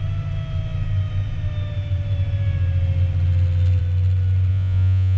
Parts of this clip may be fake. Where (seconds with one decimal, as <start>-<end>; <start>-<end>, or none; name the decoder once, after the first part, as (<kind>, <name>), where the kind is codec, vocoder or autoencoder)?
4.5-5.2 (vocoder, Vocos)